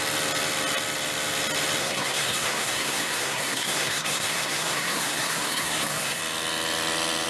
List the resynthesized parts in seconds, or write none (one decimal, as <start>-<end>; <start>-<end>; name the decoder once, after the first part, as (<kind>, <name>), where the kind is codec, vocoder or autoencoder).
1.8-6.2 (codec, SNAC)